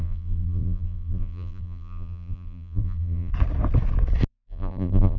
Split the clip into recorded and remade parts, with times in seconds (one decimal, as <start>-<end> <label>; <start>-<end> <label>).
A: 0.0-3.3 remade; 3.3-4.3 recorded; 4.3-5.2 remade